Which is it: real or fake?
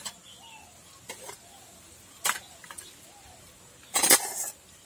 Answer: real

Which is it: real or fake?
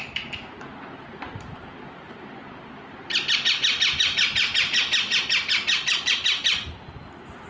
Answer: real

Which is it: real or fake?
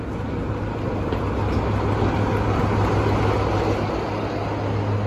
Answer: real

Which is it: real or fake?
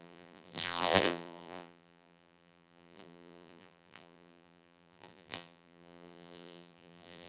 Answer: fake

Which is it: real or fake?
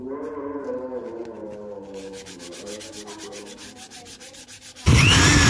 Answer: fake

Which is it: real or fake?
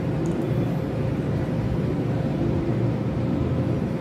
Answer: real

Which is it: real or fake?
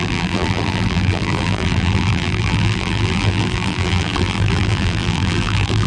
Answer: fake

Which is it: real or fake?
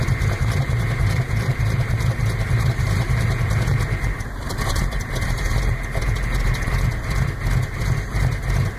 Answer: fake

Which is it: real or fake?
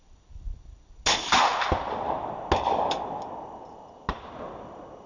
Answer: real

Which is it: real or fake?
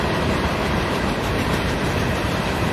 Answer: fake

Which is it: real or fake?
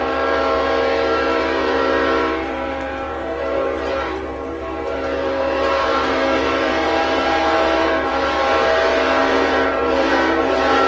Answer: fake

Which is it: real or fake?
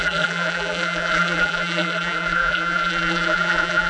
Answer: fake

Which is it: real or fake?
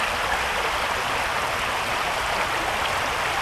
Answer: real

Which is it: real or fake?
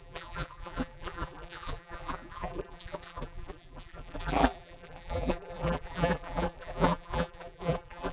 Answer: fake